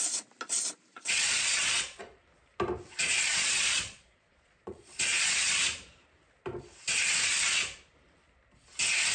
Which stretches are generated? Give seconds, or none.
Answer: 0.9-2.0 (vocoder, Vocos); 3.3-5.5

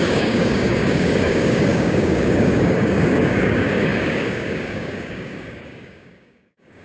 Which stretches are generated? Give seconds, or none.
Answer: 0.0-6.8 (codec, DAC)

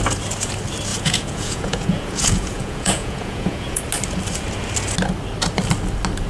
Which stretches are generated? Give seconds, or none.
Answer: 0.9-3.8 (vocoder, Vocos)

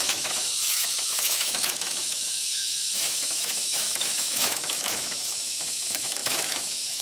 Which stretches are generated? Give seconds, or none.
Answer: 0.0-7.0 (autoencoder, DAC-VAE)

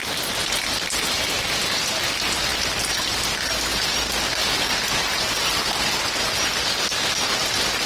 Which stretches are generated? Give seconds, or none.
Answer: none